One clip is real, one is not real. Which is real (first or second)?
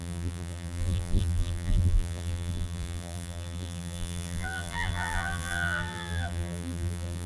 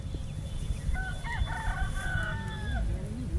second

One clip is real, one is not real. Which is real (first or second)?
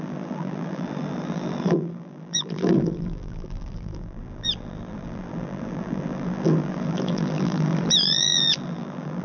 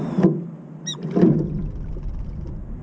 second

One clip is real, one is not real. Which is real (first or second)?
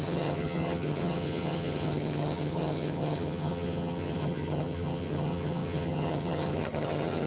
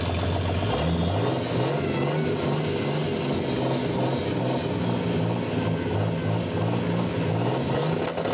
second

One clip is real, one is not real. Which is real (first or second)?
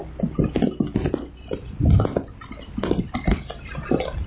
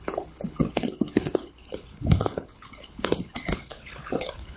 first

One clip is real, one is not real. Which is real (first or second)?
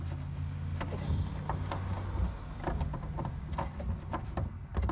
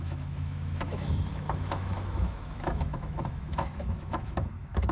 first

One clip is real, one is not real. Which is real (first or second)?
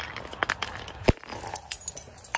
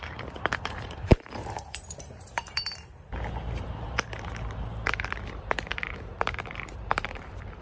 first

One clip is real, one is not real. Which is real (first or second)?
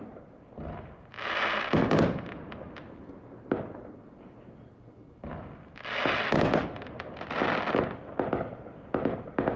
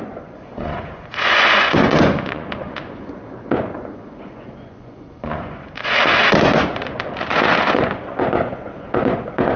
first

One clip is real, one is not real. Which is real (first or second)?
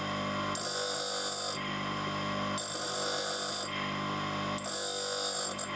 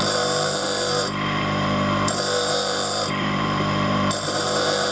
first